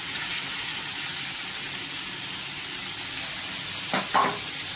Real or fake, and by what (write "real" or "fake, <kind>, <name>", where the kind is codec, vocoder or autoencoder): real